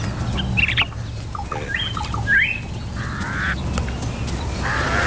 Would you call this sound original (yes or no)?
yes